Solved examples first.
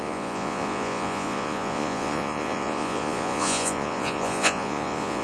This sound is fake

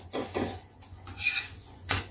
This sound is fake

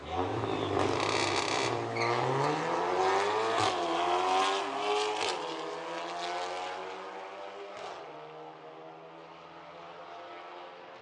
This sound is real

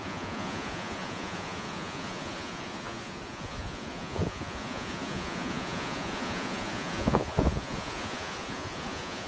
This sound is fake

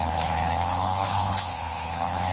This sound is fake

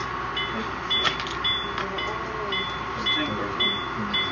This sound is real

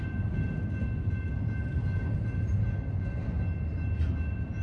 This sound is real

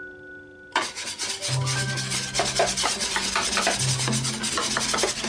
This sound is real